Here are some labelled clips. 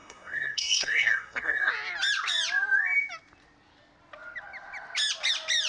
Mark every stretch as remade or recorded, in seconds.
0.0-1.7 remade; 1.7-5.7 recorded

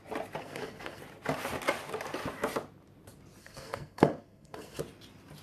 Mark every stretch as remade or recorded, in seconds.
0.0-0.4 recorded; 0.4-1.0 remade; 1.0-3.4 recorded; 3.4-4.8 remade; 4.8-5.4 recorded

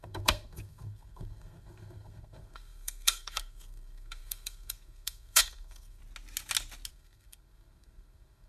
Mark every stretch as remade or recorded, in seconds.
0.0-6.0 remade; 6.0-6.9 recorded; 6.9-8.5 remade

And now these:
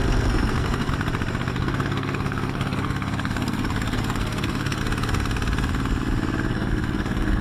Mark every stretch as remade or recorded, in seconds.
0.0-0.9 remade; 0.9-1.5 recorded; 1.5-4.8 remade; 4.8-6.5 recorded; 6.5-7.4 remade